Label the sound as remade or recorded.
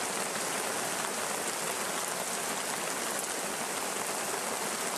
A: recorded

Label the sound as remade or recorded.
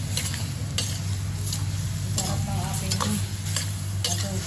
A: recorded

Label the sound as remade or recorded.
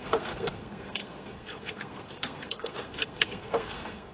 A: remade